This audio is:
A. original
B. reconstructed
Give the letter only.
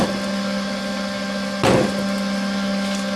A